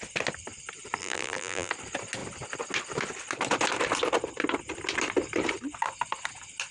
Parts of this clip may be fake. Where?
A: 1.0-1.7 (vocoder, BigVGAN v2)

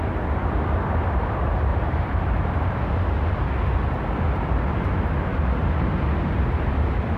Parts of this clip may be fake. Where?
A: 1.7-2.5 (vocoder, BigVGAN v2); 5.3-5.9